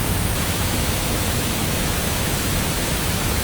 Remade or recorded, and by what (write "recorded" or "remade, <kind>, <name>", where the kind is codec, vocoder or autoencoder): remade, autoencoder, DAC-VAE